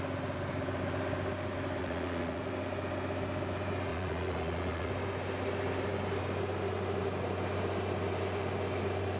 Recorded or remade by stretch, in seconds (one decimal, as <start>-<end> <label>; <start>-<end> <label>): 0.0-1.8 recorded; 1.8-2.4 remade; 2.4-3.9 recorded; 3.9-4.9 remade; 4.9-9.2 recorded